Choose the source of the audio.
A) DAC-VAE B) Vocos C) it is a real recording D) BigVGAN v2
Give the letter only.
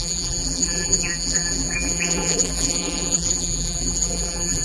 D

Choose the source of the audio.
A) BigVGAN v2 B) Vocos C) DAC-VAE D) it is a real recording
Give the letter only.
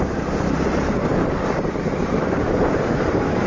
A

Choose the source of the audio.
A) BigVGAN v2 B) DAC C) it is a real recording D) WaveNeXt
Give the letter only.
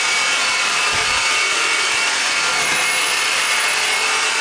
A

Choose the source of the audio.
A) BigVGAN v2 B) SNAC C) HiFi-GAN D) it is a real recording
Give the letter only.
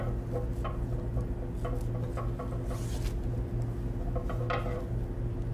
D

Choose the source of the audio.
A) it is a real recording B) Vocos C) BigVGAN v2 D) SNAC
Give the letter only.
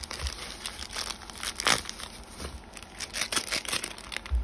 A